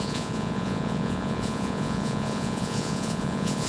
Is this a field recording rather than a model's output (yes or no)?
no